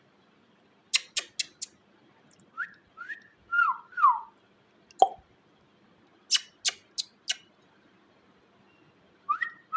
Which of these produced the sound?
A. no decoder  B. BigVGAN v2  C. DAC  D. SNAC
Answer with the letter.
A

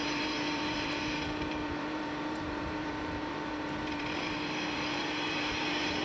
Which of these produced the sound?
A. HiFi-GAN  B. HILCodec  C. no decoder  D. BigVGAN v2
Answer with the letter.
D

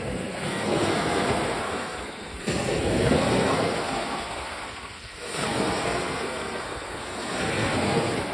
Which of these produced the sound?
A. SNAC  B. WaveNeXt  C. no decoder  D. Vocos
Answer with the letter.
A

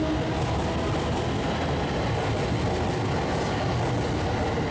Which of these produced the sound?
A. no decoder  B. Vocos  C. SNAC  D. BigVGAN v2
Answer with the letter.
A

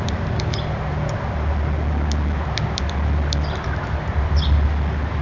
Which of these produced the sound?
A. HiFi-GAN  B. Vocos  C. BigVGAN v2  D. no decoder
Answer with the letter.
D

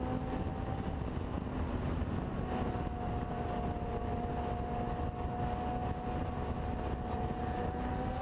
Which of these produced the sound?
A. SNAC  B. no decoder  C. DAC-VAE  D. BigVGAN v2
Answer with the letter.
B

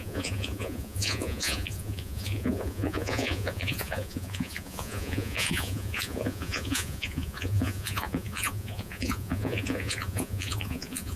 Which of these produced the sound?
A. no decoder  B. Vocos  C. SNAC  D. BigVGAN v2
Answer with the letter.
B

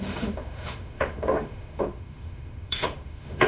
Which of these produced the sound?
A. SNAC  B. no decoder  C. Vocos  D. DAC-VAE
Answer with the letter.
D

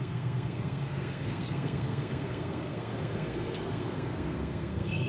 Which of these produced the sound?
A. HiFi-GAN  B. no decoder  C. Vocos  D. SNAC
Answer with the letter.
D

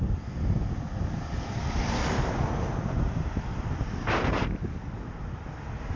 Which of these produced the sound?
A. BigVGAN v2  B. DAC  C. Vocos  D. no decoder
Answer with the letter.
D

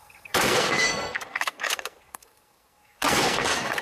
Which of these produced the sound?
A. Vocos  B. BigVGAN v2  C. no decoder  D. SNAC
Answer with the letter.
D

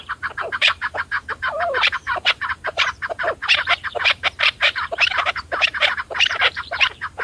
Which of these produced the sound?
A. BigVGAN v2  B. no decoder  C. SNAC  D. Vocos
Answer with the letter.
A